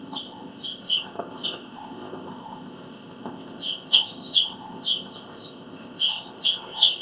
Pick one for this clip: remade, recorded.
remade